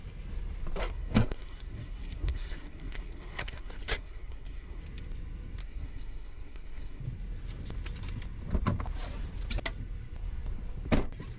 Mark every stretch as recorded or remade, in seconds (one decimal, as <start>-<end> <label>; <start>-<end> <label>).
0.0-0.8 recorded; 0.8-4.8 remade; 4.8-5.6 recorded; 5.6-7.0 remade; 7.0-11.4 recorded